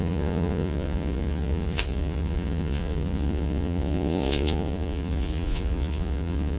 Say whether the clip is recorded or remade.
remade